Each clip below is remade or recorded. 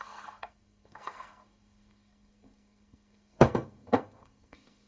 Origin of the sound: remade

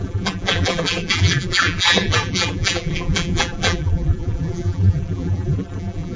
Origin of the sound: remade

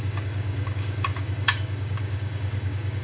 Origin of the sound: remade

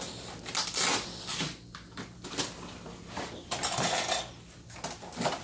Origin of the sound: recorded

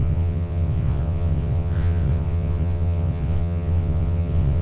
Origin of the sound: remade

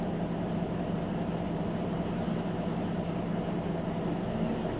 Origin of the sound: recorded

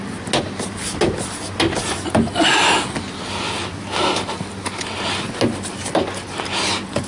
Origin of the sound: recorded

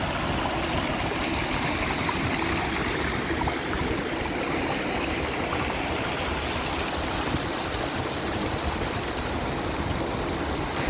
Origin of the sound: recorded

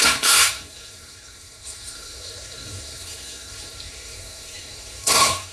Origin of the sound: remade